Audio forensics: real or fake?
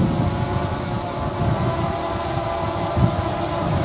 real